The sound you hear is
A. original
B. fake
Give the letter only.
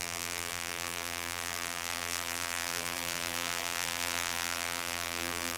B